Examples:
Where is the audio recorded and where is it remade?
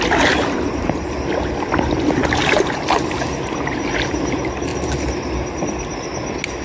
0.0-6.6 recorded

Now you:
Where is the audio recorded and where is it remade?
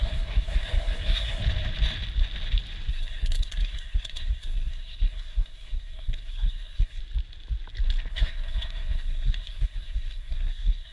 0.0-1.4 remade; 1.4-2.9 recorded; 2.9-7.0 remade; 7.0-8.1 recorded; 8.1-10.9 remade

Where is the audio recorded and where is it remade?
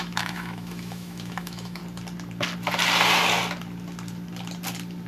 0.0-1.8 remade; 1.8-5.1 recorded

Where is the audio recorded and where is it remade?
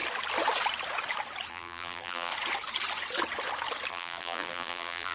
0.0-1.5 recorded; 1.5-2.3 remade; 2.3-3.9 recorded; 3.9-5.1 remade